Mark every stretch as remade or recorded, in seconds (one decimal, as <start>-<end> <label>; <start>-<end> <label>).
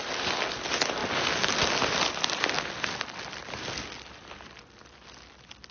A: 0.0-5.7 recorded